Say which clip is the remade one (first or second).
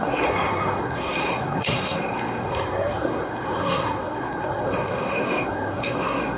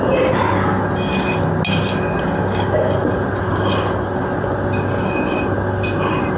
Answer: first